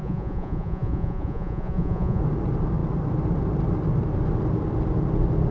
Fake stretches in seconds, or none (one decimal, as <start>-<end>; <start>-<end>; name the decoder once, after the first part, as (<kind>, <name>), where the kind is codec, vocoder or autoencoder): 0.0-2.2 (vocoder, Vocos)